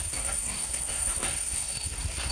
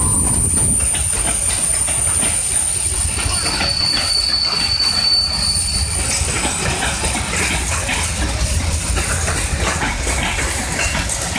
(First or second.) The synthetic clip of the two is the first